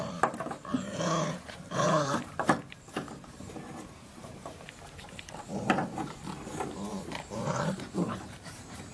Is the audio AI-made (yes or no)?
yes